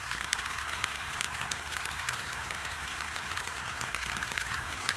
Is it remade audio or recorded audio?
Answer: remade